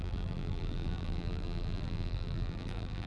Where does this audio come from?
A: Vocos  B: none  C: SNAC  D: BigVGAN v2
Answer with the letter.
D